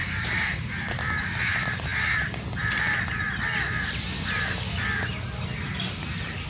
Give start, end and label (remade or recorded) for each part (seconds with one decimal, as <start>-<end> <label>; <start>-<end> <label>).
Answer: 0.0-0.7 remade; 0.7-6.5 recorded